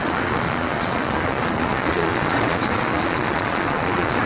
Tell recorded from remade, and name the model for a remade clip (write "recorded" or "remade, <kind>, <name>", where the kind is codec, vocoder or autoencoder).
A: remade, vocoder, Vocos